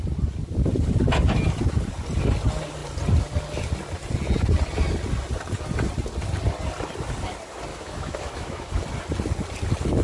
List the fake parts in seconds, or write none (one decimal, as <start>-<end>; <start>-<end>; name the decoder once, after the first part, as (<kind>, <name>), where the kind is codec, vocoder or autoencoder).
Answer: 7.7-8.7 (autoencoder, DAC-VAE)